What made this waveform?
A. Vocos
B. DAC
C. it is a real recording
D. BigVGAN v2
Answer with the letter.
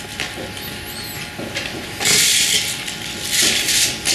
C